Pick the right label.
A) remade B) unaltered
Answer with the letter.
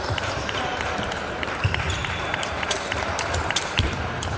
A